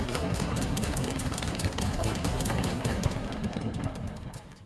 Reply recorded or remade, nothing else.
remade